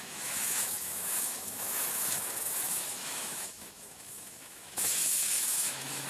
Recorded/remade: remade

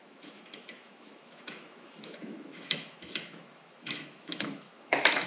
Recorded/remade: remade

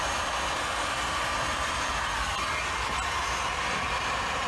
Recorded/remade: recorded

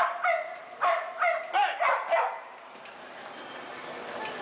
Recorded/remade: recorded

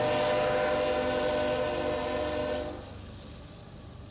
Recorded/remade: recorded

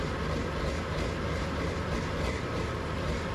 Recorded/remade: remade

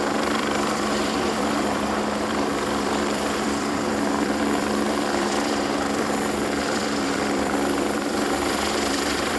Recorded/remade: remade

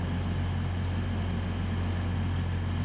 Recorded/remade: recorded